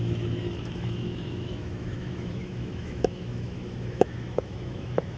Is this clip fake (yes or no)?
yes